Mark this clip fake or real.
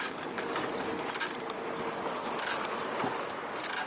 real